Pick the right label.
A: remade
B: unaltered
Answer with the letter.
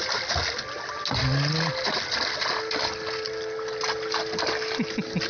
B